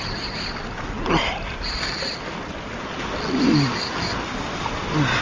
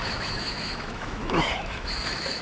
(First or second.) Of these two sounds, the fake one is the second